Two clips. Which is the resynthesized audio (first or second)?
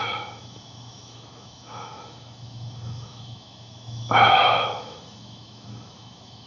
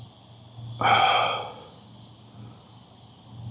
first